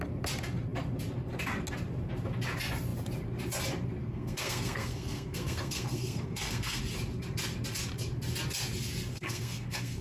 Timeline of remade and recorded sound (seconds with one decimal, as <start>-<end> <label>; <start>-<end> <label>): 0.0-4.0 recorded; 4.0-6.8 remade; 6.8-9.1 recorded; 9.1-10.0 remade